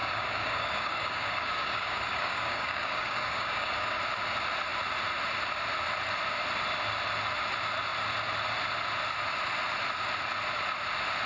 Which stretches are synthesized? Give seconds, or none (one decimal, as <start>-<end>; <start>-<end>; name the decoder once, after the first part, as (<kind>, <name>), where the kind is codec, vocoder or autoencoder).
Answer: 0.0-4.0 (codec, DAC)